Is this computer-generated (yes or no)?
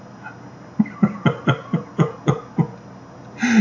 no